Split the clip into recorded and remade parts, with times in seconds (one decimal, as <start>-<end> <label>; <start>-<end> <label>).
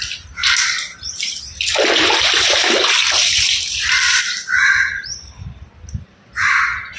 0.0-0.4 recorded; 0.4-1.4 remade; 1.4-3.0 recorded; 3.0-4.9 remade; 4.9-7.0 recorded